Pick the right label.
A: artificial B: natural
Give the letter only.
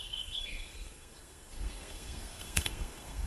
A